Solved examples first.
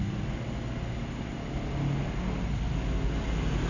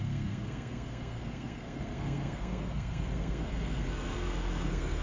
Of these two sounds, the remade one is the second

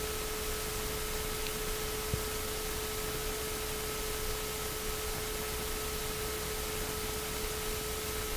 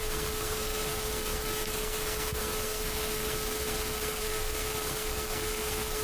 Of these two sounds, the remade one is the second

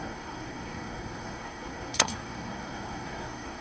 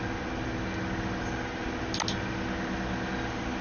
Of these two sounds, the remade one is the first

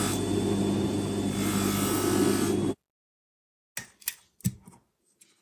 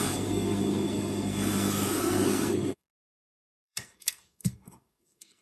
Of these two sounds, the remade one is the second